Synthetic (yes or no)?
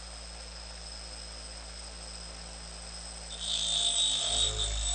no